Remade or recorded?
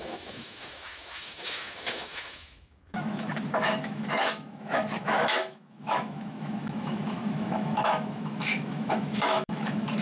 remade